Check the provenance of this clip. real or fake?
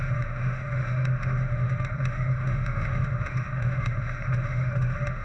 fake